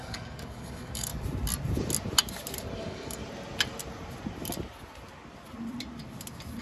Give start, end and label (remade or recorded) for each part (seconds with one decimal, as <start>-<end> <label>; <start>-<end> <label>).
0.0-1.1 remade; 1.1-2.7 recorded; 2.7-3.2 remade; 3.2-6.6 recorded